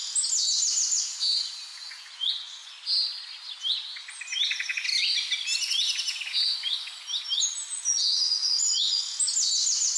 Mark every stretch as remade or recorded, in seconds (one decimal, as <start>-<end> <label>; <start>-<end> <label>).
0.0-1.7 recorded; 1.7-2.7 remade; 2.7-8.4 recorded; 8.4-9.0 remade; 9.0-10.0 recorded